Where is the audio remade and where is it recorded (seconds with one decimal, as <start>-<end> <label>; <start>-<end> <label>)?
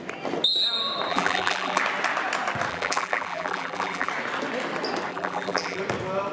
0.0-1.1 recorded; 1.1-1.8 remade; 1.8-2.7 recorded; 2.7-4.1 remade; 4.1-5.1 recorded; 5.1-5.8 remade; 5.8-6.3 recorded